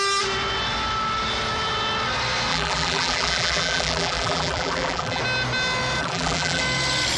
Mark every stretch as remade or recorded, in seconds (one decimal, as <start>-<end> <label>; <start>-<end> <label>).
0.0-2.5 recorded; 2.5-5.2 remade; 5.2-6.0 recorded; 6.0-6.6 remade; 6.6-7.2 recorded